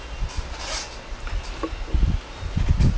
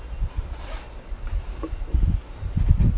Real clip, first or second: first